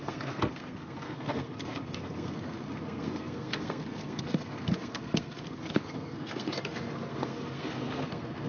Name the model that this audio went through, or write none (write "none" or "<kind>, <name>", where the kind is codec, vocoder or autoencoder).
codec, SNAC